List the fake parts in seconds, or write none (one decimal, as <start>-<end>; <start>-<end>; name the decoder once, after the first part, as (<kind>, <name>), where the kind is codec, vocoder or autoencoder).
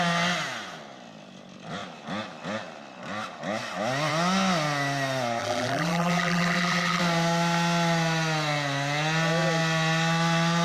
5.4-7.0 (vocoder, BigVGAN v2)